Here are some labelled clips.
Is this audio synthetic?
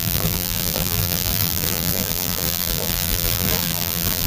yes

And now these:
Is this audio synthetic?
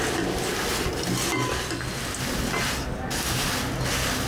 no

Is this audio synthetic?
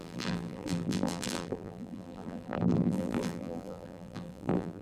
yes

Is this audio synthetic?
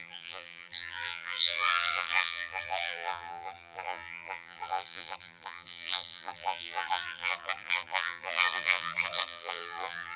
yes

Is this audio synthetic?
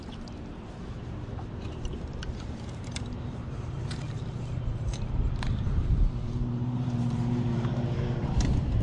yes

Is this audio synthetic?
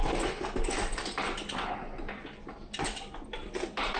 no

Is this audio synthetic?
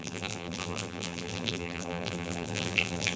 yes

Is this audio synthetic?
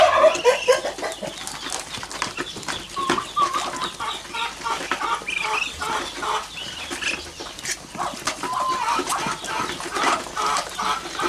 no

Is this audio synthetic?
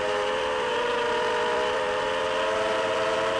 yes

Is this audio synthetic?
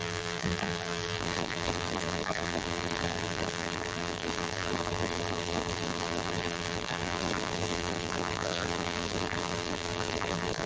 yes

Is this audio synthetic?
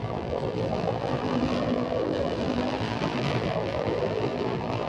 yes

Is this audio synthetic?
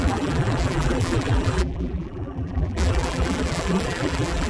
yes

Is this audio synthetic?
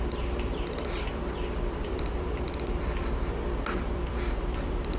yes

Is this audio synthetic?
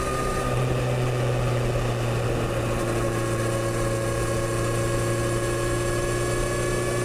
no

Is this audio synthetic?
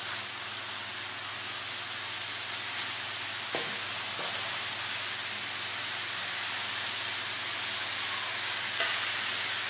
no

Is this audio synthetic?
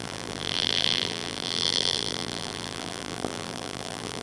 yes